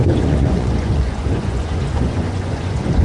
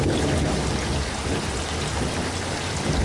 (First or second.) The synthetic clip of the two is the first